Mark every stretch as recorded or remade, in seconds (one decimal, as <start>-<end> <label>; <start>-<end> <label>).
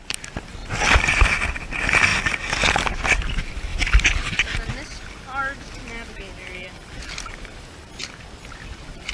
0.0-0.6 recorded; 0.6-1.6 remade; 1.6-9.1 recorded